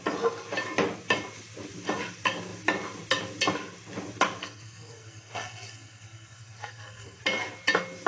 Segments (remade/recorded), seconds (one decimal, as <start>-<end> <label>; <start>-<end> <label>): 0.0-4.4 recorded; 4.4-7.2 remade; 7.2-8.1 recorded